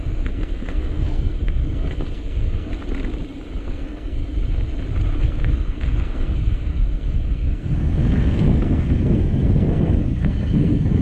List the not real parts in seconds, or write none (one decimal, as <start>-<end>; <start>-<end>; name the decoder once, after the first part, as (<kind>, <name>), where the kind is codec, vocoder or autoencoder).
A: 0.0-2.7 (codec, SNAC); 3.6-4.2; 5.2-11.0